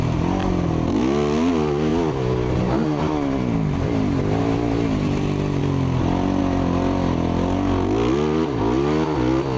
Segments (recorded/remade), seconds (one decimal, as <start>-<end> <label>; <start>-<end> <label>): 0.0-9.6 recorded